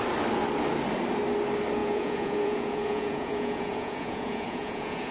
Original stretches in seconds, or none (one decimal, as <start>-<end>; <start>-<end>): 0.0-1.8